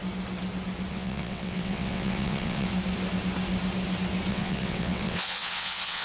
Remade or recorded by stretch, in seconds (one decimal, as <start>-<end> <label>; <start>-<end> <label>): 0.0-0.9 recorded; 0.9-2.7 remade; 2.7-4.3 recorded; 4.3-6.0 remade